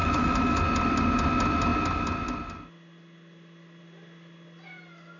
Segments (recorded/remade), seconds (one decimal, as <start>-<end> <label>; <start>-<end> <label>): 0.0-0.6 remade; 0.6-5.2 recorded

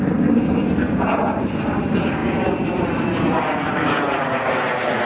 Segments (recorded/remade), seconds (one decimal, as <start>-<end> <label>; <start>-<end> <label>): 0.0-5.1 recorded

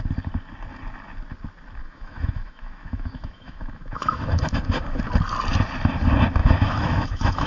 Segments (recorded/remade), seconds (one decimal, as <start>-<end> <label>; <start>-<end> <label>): 0.0-1.8 recorded; 1.8-5.0 remade; 5.0-6.4 recorded; 6.4-7.5 remade

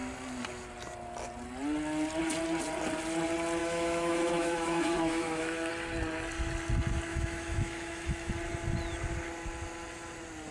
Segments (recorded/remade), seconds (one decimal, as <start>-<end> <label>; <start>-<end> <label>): 0.0-3.6 recorded; 3.6-5.7 remade; 5.7-7.1 recorded; 7.1-8.3 remade; 8.3-10.5 recorded